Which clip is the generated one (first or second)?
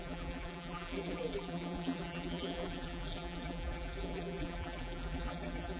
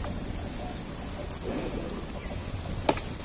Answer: first